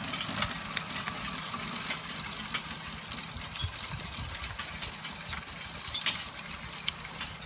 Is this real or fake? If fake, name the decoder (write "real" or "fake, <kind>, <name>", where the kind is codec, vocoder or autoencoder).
real